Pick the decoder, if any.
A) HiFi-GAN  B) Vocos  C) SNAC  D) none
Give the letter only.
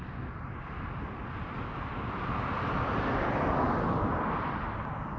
D